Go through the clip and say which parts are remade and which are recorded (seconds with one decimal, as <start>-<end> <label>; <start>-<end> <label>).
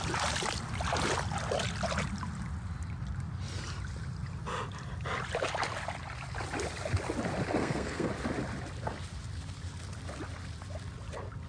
0.0-7.6 recorded; 7.6-8.1 remade; 8.1-11.5 recorded